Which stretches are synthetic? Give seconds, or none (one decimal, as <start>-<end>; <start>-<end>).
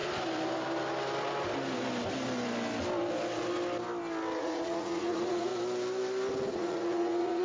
4.4-5.5; 6.5-7.4